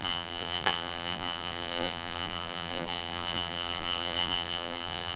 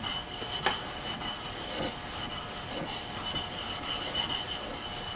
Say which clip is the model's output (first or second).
first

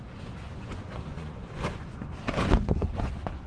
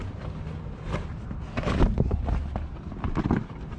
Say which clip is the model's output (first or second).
first